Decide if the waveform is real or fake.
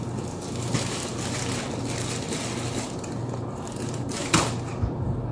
real